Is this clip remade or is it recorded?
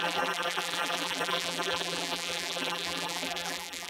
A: remade